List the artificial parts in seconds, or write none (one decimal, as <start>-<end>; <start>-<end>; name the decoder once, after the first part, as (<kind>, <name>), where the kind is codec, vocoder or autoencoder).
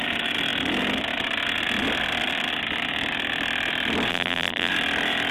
4.1-4.7 (vocoder, BigVGAN v2)